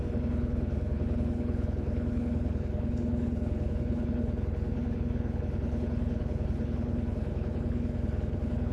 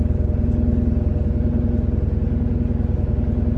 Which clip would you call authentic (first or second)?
second